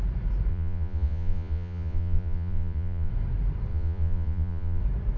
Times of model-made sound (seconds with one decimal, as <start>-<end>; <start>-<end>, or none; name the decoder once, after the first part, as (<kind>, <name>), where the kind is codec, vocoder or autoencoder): 0.5-3.1 (vocoder, Vocos); 3.7-4.8